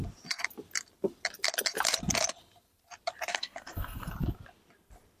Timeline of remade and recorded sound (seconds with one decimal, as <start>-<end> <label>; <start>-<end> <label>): 0.0-3.3 recorded; 3.3-4.1 remade; 4.1-5.2 recorded